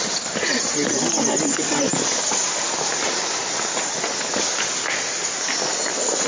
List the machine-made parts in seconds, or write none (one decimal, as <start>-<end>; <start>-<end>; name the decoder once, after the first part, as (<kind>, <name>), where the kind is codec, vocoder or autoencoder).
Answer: none